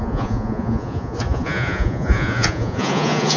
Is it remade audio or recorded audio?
remade